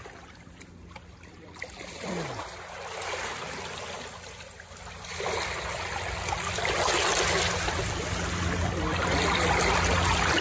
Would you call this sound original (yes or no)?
yes